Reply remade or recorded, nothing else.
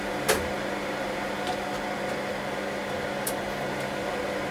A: recorded